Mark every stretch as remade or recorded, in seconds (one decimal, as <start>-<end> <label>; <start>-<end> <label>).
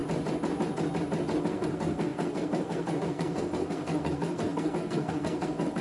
0.0-1.4 recorded; 1.4-5.8 remade